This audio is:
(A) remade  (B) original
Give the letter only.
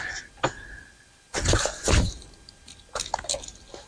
B